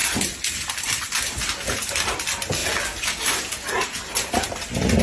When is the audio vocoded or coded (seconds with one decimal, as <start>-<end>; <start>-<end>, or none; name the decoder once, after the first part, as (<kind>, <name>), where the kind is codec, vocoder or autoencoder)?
0.8-2.6 (vocoder, BigVGAN v2); 4.1-5.0